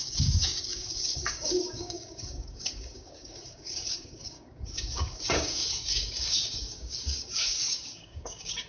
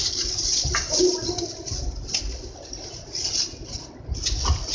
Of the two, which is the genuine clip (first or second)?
second